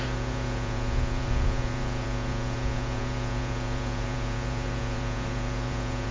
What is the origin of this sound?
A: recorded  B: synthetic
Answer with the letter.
B